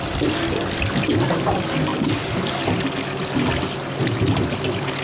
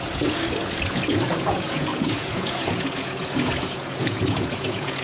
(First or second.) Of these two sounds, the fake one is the second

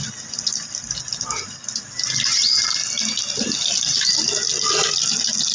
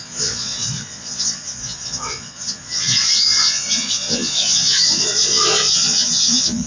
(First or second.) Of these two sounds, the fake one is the second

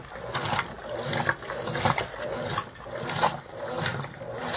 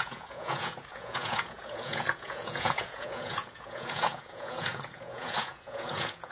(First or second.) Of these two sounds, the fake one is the second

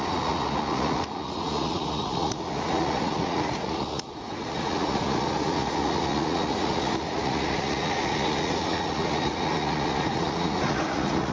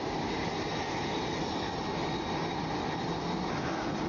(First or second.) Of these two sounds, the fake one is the first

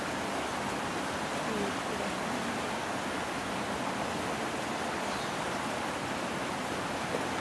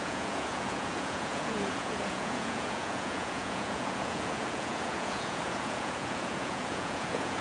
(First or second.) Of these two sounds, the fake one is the second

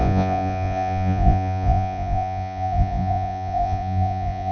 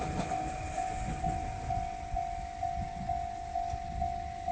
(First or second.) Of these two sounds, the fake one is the first